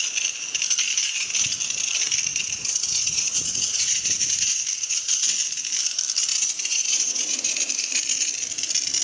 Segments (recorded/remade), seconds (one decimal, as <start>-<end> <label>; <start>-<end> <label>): 0.0-2.3 recorded; 2.3-4.6 remade; 4.6-6.3 recorded; 6.3-7.6 remade; 7.6-9.0 recorded